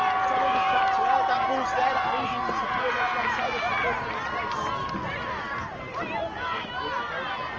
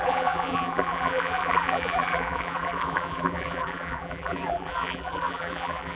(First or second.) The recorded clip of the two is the first